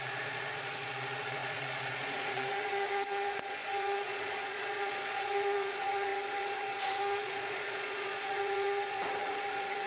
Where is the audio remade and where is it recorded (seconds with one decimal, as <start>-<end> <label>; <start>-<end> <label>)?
0.0-9.9 remade